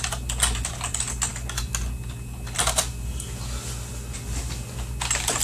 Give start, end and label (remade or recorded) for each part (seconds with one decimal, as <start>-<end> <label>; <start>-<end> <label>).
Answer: 0.0-5.4 recorded